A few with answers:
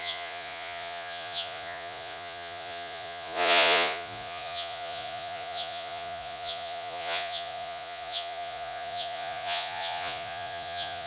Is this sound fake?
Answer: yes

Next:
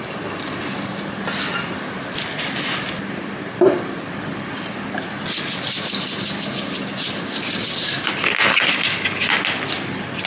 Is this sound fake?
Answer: no